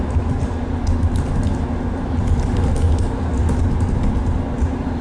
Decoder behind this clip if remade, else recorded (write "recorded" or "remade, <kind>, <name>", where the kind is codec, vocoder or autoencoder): recorded